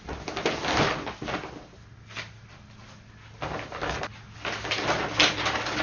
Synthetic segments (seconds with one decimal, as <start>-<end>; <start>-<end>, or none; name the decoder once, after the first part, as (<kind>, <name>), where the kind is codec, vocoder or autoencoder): none

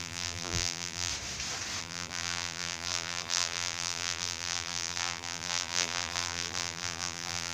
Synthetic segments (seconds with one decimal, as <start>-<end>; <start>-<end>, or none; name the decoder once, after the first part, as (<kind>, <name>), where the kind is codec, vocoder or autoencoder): 0.0-1.1 (vocoder, BigVGAN v2); 1.8-7.5

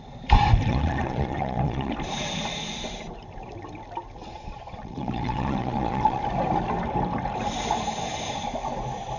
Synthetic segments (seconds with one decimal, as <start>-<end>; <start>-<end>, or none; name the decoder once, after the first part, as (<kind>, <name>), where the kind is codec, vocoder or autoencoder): 0.7-1.9 (vocoder, Vocos); 4.2-6.2

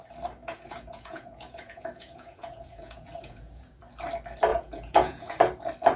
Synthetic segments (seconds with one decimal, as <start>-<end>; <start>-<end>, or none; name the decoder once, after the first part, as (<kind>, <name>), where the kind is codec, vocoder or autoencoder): 0.4-3.8 (vocoder, Vocos); 4.5-5.4

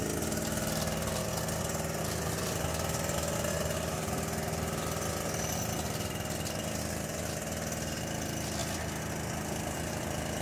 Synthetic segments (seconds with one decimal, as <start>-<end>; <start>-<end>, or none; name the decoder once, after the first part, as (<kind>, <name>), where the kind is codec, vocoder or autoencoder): none

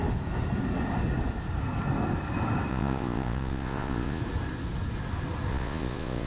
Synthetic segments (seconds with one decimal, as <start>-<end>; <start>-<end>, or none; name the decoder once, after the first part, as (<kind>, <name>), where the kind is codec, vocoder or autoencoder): 2.7-4.2 (vocoder, Vocos); 5.5-6.3

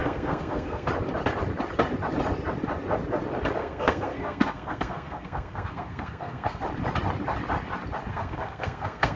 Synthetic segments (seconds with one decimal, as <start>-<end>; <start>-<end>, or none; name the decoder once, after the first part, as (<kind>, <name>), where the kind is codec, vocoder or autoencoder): 0.0-0.9 (codec, SNAC); 3.6-6.6; 8.1-9.2